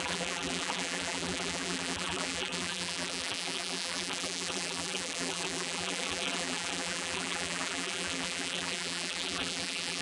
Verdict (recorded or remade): remade